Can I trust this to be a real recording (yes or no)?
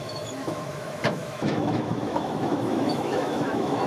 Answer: no